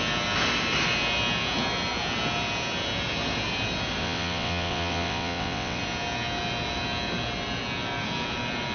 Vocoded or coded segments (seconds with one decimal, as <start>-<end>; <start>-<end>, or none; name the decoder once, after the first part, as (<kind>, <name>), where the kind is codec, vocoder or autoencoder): 4.0-5.8 (vocoder, WaveNeXt)

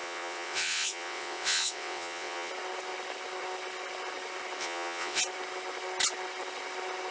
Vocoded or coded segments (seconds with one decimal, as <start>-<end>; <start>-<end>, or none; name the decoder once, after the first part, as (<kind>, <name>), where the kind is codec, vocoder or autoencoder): 0.0-2.5 (vocoder, WaveNeXt); 4.6-5.2